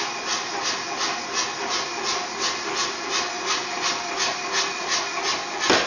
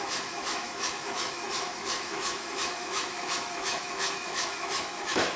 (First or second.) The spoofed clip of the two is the second